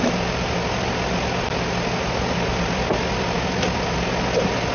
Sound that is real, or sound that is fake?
real